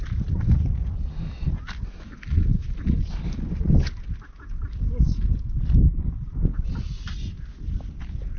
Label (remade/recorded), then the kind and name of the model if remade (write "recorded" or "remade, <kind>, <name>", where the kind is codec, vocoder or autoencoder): recorded